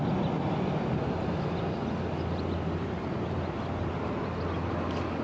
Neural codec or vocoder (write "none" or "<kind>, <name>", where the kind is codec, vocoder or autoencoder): none